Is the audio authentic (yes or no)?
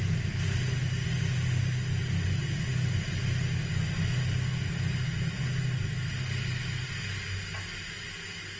yes